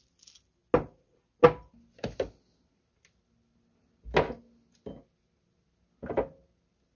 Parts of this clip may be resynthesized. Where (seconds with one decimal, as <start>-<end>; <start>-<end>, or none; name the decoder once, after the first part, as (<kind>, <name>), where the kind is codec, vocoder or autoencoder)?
none